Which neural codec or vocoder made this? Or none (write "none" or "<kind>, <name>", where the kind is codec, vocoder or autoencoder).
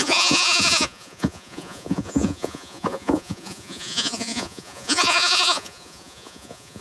vocoder, Vocos